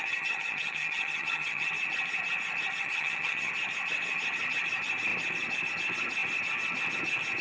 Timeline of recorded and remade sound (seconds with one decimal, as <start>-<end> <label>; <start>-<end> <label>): 0.0-1.7 remade; 1.7-2.8 recorded; 2.8-3.5 remade; 3.5-7.4 recorded